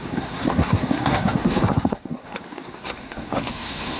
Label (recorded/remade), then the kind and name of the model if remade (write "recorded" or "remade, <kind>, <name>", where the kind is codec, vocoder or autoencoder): remade, codec, SNAC